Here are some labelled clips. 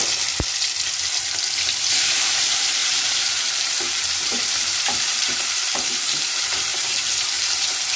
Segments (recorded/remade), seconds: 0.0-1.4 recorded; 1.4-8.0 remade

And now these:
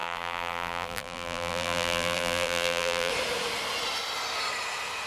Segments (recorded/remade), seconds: 0.0-3.1 remade; 3.1-5.1 recorded

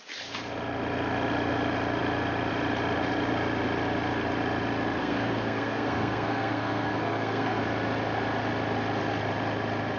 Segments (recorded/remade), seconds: 0.0-5.0 recorded; 5.0-7.6 remade; 7.6-10.0 recorded

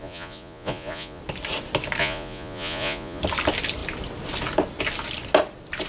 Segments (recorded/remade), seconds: 0.0-1.2 remade; 1.2-2.0 recorded; 2.0-3.2 remade; 3.2-5.9 recorded

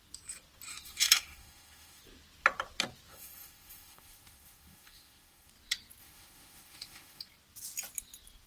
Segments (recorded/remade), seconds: 0.0-0.7 recorded; 0.7-2.0 remade; 2.0-3.1 recorded; 3.1-5.5 remade; 5.5-6.0 recorded; 6.0-7.2 remade; 7.2-8.5 recorded